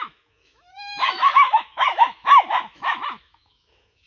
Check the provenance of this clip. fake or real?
fake